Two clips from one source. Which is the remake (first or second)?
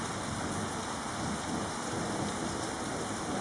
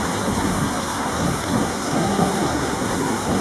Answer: second